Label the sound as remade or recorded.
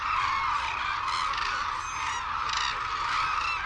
recorded